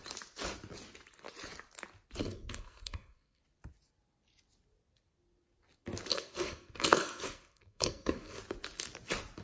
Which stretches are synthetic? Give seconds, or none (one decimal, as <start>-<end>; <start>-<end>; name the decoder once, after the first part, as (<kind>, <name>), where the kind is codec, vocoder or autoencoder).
2.2-3.4 (codec, SNAC); 6.1-8.4

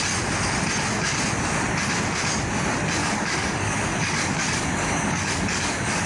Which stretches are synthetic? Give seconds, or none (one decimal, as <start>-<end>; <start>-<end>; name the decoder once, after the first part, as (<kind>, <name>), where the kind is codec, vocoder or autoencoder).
3.0-6.1 (codec, DAC)

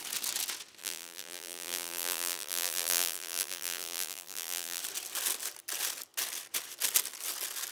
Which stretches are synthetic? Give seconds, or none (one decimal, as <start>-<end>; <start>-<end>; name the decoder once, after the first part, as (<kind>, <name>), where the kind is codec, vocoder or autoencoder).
0.8-4.8 (vocoder, BigVGAN v2)

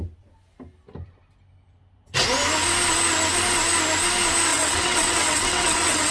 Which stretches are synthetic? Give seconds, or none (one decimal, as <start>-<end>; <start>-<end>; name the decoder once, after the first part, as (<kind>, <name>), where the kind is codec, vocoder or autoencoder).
4.5-6.1 (vocoder, WaveNeXt)